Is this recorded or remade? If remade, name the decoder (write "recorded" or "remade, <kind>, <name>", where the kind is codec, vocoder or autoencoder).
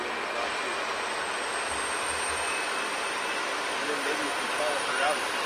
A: remade, vocoder, BigVGAN v2